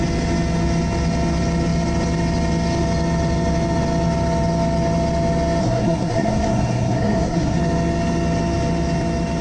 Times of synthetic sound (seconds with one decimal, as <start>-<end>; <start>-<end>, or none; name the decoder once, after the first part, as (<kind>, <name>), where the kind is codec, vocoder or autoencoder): 5.6-7.6 (codec, SNAC)